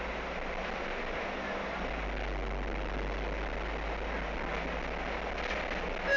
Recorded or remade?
recorded